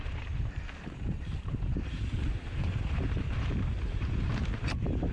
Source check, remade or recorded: remade